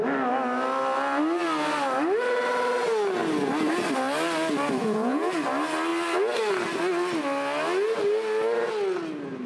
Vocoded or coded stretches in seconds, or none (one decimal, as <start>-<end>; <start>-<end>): 4.8-5.3